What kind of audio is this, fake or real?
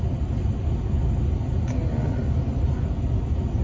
real